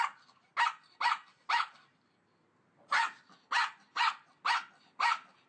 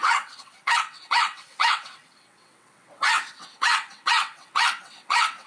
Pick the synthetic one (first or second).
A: second